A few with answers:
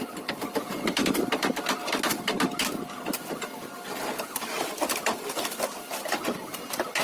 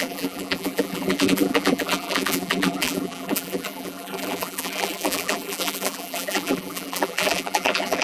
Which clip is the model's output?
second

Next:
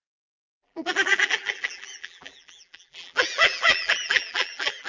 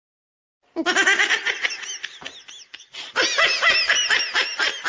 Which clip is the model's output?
first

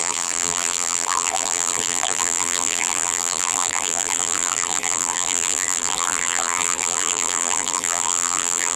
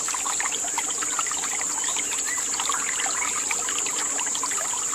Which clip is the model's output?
first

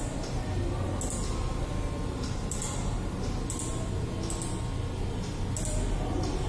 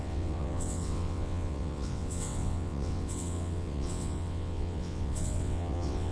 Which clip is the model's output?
second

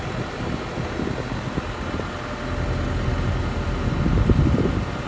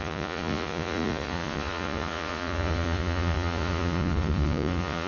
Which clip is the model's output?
second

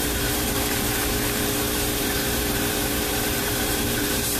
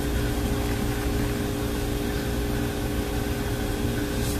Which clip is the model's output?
first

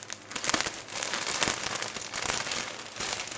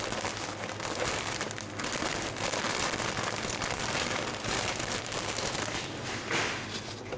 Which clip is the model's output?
second